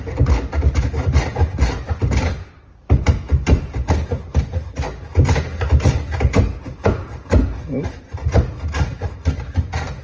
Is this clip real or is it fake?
real